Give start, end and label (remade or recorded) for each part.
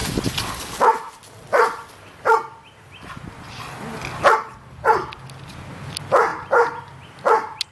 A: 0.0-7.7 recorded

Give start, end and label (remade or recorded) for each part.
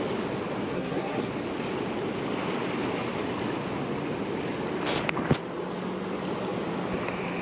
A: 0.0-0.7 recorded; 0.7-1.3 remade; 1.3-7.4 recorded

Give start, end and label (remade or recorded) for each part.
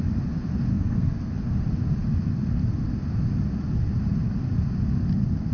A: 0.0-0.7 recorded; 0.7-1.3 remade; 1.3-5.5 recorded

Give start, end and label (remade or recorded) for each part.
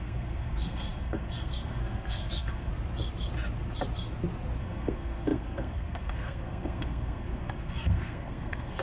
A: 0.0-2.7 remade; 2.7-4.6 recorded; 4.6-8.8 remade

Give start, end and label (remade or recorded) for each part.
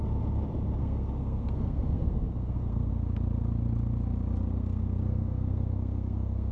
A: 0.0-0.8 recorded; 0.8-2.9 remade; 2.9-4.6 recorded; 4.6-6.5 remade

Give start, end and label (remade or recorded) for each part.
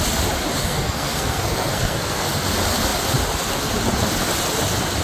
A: 0.0-0.6 recorded; 0.6-2.3 remade; 2.3-5.0 recorded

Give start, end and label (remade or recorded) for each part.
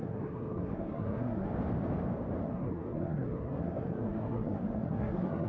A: 0.0-1.5 remade; 1.5-2.4 recorded; 2.4-5.5 remade